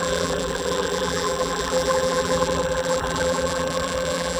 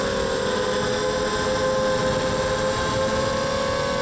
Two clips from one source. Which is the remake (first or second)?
first